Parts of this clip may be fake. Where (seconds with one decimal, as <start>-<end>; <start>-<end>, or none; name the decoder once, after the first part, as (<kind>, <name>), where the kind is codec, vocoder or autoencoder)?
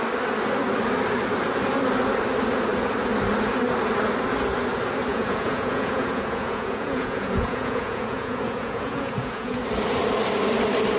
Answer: 5.1-9.6 (vocoder, Vocos)